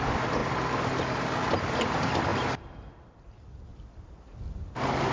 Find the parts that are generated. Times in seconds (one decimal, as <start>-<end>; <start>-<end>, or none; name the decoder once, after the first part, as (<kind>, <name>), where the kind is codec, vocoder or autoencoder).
none